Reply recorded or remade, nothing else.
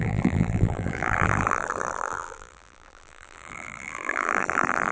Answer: remade